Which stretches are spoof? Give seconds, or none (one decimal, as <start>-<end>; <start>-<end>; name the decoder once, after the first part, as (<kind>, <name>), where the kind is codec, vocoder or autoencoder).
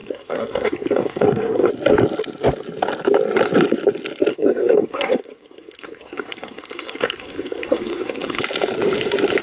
0.0-1.7 (codec, SNAC); 4.3-8.4